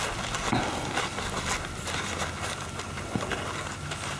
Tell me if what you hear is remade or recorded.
recorded